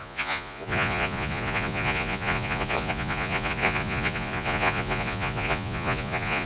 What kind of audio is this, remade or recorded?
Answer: remade